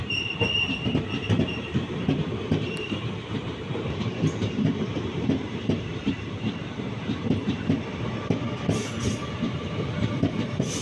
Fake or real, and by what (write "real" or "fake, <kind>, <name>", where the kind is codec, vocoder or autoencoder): fake, vocoder, BigVGAN v2